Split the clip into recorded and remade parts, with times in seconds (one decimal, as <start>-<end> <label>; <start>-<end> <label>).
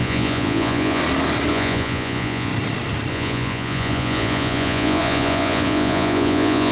0.0-1.0 remade; 1.0-1.5 recorded; 1.5-2.5 remade; 2.5-3.1 recorded; 3.1-6.7 remade